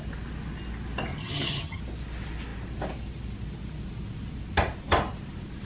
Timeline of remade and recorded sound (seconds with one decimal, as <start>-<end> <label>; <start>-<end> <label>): 0.0-1.1 recorded; 1.1-1.8 remade; 1.8-5.6 recorded